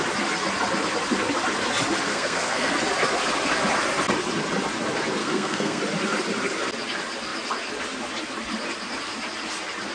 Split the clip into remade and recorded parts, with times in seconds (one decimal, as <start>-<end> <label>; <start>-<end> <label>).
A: 0.0-2.1 recorded; 2.1-2.7 remade; 2.7-5.2 recorded; 5.2-5.8 remade; 5.8-9.9 recorded